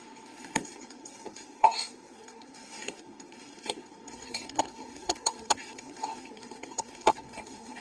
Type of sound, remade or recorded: remade